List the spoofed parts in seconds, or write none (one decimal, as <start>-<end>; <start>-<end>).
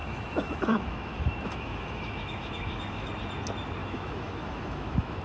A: 0.0-3.1; 3.8-5.2